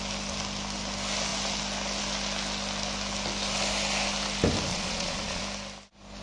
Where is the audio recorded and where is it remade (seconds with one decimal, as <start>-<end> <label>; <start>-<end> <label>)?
0.0-4.7 recorded; 4.7-5.4 remade; 5.4-6.2 recorded